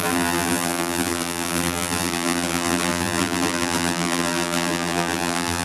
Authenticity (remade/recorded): remade